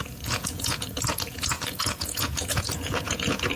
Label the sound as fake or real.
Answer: fake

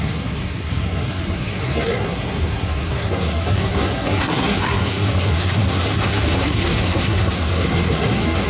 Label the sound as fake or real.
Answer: fake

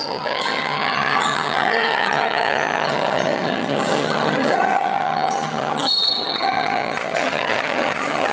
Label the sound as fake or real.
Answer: fake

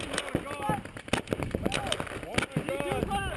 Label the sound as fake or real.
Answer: real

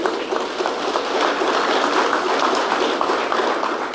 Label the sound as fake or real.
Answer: real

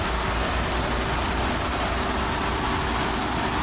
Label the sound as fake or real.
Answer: real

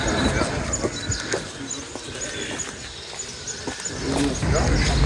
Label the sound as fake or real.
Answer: real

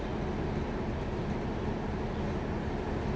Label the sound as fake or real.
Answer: real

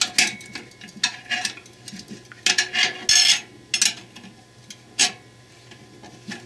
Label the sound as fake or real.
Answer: real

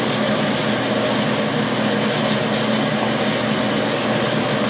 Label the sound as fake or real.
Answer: real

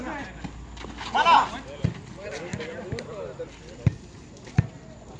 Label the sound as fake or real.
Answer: real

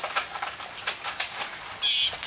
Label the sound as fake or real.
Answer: real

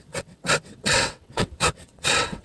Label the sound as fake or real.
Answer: fake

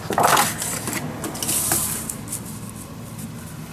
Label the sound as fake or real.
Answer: real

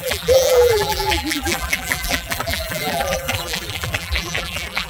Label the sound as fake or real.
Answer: fake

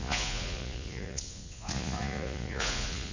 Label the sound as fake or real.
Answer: fake